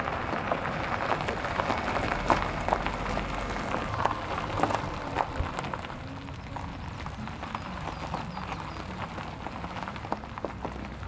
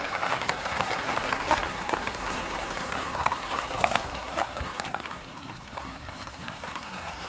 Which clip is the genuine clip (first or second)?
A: first